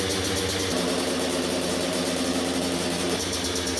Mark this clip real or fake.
real